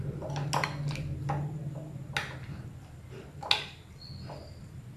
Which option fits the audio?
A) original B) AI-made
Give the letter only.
A